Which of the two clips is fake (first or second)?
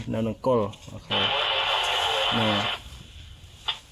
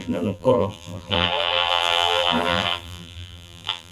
second